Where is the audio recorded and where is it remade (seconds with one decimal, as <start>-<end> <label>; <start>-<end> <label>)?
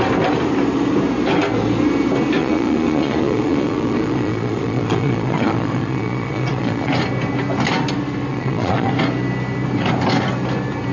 0.0-2.4 recorded; 2.4-6.9 remade; 6.9-8.3 recorded; 8.3-8.9 remade; 8.9-10.9 recorded